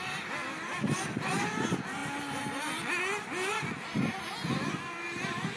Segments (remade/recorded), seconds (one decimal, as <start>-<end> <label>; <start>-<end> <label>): 0.0-0.4 recorded; 0.4-1.3 remade; 1.3-5.6 recorded